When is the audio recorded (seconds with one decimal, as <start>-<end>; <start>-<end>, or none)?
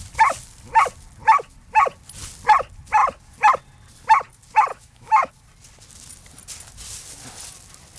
0.0-4.7; 5.3-8.0